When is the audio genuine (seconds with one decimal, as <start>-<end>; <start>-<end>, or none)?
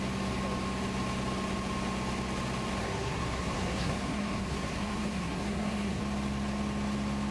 0.0-2.8; 6.0-7.3